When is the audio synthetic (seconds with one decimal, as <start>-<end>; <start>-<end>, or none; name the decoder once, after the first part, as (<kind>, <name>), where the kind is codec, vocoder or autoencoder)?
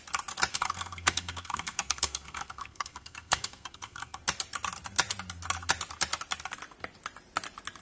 0.5-4.2 (codec, SNAC)